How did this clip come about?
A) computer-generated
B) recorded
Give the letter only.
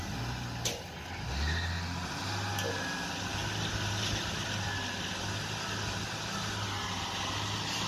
B